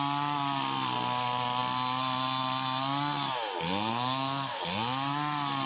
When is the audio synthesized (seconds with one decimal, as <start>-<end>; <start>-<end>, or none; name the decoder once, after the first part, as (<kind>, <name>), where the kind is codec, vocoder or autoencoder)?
3.9-4.6 (codec, SNAC)